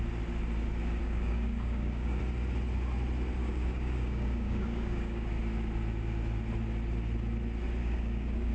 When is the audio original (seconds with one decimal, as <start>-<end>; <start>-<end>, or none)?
0.0-1.0; 2.2-3.4; 5.3-7.8